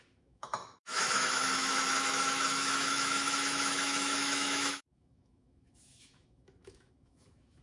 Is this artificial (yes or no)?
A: yes